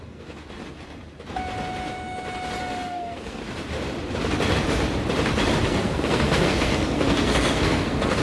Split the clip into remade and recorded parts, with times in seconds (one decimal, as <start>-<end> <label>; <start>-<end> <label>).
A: 0.0-0.4 remade; 0.4-2.6 recorded; 2.6-3.4 remade; 3.4-5.6 recorded; 5.6-8.2 remade